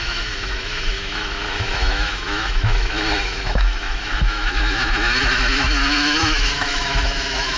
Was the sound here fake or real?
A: fake